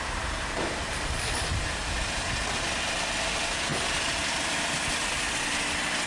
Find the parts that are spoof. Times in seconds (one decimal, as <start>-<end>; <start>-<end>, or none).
none